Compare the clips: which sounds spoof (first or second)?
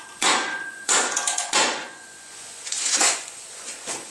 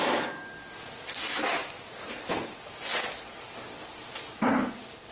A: first